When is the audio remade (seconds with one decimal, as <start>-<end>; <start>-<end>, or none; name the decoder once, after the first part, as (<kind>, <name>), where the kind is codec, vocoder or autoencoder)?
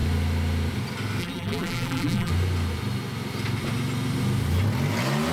1.2-2.3 (vocoder, BigVGAN v2)